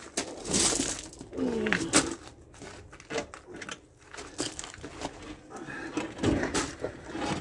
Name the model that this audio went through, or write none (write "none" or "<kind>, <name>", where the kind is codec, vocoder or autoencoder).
none